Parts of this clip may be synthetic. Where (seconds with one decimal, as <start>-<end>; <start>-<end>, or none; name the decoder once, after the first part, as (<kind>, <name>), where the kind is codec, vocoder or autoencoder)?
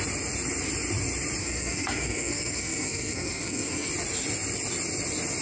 1.4-3.9 (codec, SNAC)